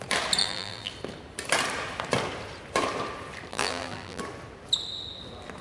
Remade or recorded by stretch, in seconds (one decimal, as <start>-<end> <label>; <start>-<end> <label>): 0.0-0.4 recorded; 0.4-0.9 remade; 0.9-3.5 recorded; 3.5-4.2 remade; 4.2-5.6 recorded